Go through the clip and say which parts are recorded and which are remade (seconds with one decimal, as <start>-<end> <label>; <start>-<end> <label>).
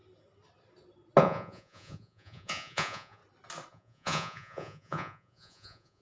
0.0-1.2 recorded; 1.2-3.2 remade; 3.2-3.7 recorded; 3.7-6.0 remade